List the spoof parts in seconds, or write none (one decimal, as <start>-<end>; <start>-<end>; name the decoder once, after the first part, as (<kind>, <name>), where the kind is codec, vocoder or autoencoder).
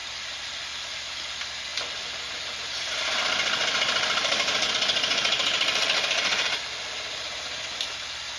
0.0-0.6 (vocoder, BigVGAN v2); 1.7-4.7